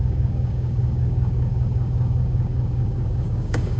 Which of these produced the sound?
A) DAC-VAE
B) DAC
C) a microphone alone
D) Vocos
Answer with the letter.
B